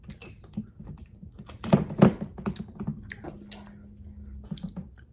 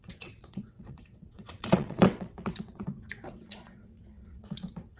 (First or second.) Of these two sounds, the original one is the first